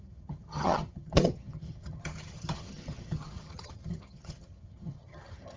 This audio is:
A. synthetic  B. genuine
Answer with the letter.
A